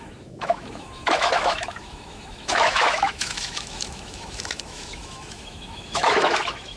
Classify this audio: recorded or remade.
remade